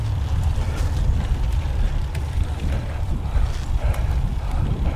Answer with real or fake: real